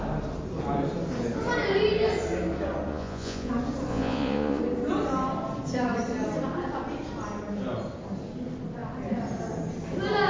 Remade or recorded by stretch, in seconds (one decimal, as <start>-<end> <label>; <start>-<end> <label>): 0.0-2.9 recorded; 2.9-3.5 remade; 3.5-3.9 recorded; 3.9-4.6 remade; 4.6-10.3 recorded